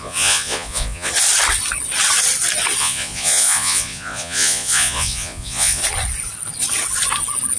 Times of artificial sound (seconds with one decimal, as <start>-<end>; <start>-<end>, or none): 0.0-1.1; 2.8-5.8